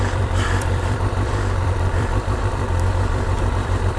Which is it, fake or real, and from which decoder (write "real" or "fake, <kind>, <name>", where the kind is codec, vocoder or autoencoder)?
fake, vocoder, BigVGAN v2